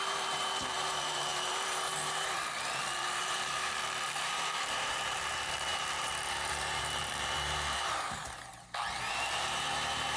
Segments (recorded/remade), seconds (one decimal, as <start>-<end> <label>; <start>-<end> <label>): 0.0-8.2 remade; 8.2-9.0 recorded; 9.0-10.2 remade